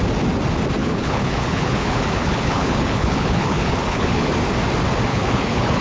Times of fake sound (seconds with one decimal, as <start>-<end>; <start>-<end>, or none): 0.8-4.3; 5.1-5.8